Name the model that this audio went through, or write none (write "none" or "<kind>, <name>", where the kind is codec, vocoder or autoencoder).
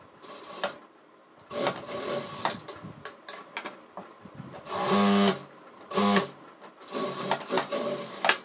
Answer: none